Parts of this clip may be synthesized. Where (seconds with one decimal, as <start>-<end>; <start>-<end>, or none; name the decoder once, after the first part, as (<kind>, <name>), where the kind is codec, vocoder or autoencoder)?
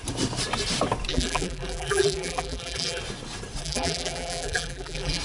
1.1-3.0 (vocoder, BigVGAN v2); 3.6-5.2